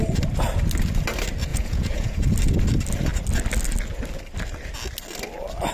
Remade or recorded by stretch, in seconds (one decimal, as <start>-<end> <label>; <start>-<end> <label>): 0.0-1.5 recorded; 1.5-2.2 remade; 2.2-5.7 recorded